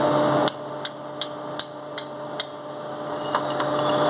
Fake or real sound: real